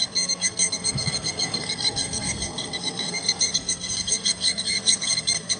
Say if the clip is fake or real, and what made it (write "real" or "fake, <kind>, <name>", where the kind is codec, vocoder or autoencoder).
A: fake, codec, SNAC